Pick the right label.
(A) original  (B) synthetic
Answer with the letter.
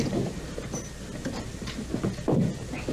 A